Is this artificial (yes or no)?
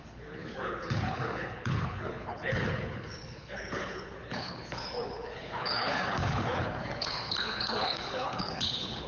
yes